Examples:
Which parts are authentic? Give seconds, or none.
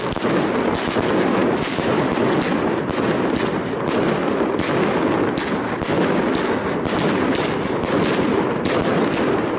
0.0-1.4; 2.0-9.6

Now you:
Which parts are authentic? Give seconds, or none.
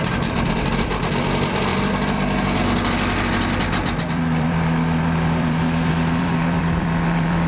none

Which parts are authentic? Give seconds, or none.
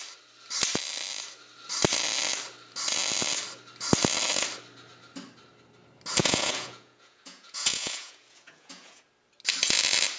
0.0-6.2; 9.0-10.2